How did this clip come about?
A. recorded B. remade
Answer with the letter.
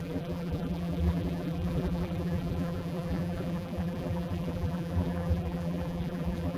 B